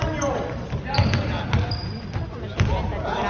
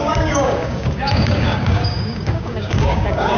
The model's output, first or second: second